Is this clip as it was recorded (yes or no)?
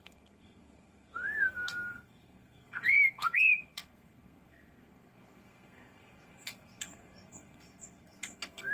no